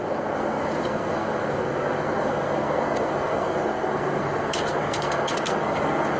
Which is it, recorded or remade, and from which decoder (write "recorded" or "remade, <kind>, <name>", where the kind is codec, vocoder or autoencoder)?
remade, codec, SNAC